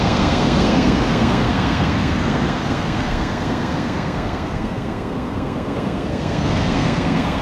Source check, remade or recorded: remade